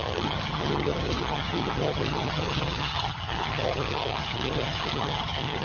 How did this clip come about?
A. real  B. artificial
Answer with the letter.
B